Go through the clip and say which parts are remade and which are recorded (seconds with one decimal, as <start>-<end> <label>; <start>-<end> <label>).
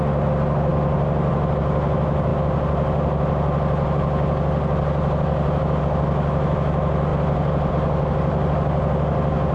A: 0.0-9.5 recorded